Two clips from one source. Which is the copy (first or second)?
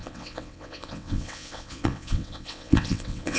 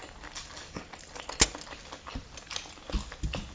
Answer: first